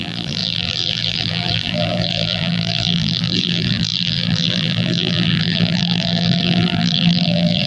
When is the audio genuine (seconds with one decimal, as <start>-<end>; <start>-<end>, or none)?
none